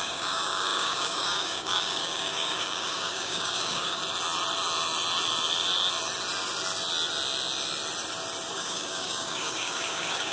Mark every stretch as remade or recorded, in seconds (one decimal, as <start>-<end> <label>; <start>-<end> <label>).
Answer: 0.0-4.0 remade; 4.0-8.5 recorded; 8.5-10.3 remade